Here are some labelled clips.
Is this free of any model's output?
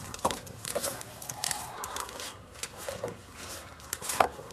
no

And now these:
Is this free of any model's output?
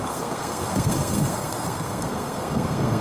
no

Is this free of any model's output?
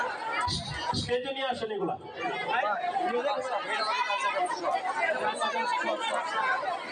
yes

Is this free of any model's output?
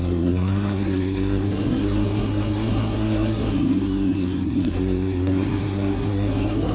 no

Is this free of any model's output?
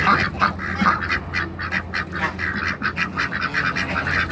yes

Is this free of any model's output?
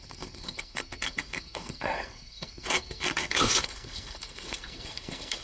no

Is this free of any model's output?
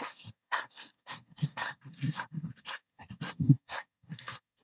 no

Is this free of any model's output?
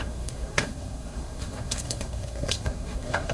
no